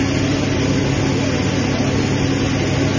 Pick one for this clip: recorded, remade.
recorded